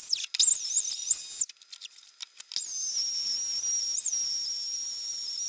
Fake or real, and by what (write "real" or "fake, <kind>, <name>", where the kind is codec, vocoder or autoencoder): real